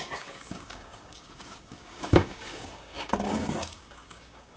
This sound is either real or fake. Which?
fake